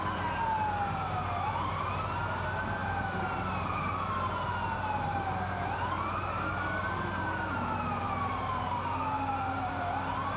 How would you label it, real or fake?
real